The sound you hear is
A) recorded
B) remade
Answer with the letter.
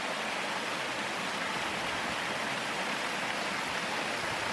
A